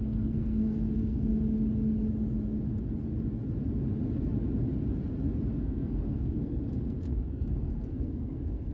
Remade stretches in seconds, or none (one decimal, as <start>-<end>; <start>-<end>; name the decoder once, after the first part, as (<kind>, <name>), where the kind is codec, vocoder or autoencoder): 0.0-1.3 (codec, SNAC); 5.6-8.7